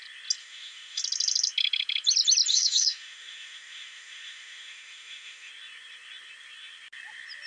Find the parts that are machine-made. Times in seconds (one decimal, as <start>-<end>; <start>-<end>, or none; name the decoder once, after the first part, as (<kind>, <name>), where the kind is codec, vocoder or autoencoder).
0.4-1.0 (autoencoder, DAC-VAE); 2.5-5.5